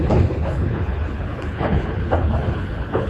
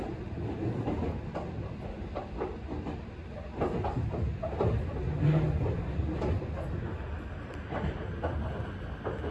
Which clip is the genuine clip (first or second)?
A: second